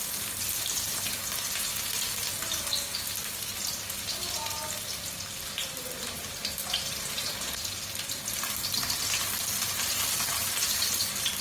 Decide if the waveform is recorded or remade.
recorded